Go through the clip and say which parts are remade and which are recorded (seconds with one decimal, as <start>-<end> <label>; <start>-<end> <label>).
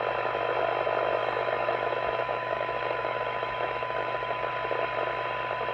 0.0-1.2 recorded; 1.2-4.5 remade; 4.5-5.7 recorded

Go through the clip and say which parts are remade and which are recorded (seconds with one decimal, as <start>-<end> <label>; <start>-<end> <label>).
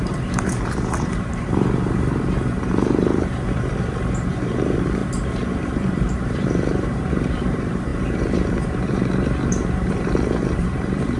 0.0-11.2 remade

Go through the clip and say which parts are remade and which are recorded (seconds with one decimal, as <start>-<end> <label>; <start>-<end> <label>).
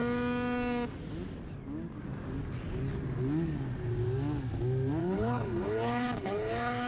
0.0-5.0 recorded; 5.0-6.9 remade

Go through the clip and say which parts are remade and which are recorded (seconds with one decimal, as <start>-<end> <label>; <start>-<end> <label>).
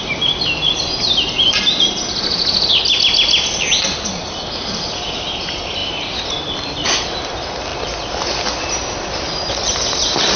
0.0-10.4 recorded